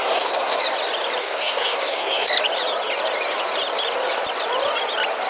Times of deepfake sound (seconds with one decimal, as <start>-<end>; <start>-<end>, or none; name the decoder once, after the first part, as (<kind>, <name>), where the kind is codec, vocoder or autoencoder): 0.0-0.6 (codec, SNAC); 1.2-2.3